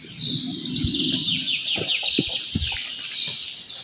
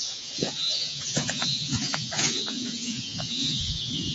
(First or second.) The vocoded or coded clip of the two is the second